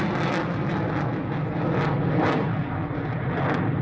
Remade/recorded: recorded